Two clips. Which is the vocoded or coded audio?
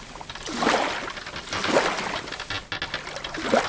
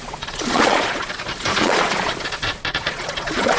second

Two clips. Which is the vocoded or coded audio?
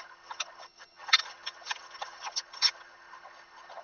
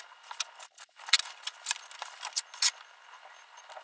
first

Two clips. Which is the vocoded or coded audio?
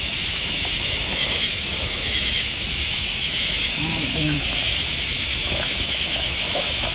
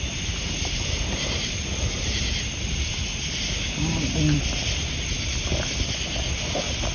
first